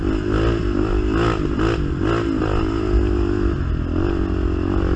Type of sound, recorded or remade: recorded